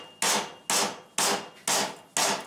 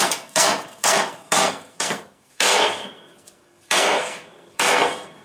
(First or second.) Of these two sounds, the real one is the first